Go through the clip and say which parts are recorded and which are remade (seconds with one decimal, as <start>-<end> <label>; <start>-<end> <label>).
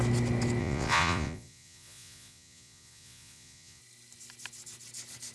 0.0-0.6 recorded; 0.6-3.8 remade; 3.8-5.3 recorded